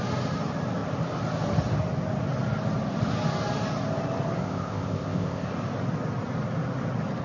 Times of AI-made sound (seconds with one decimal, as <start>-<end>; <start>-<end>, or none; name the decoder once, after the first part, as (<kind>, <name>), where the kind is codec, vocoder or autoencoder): 4.4-5.5 (codec, ZipCodec)